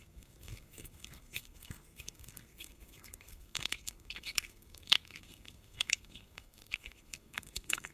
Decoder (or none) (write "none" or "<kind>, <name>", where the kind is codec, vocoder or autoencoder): codec, SNAC